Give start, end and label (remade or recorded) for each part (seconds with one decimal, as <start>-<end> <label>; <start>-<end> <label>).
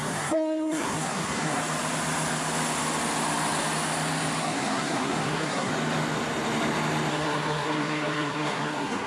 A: 0.0-1.6 remade; 1.6-4.4 recorded; 4.4-5.7 remade; 5.7-7.1 recorded; 7.1-9.1 remade